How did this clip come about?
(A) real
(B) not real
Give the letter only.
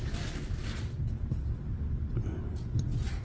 A